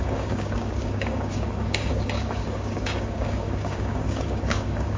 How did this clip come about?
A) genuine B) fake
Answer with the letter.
B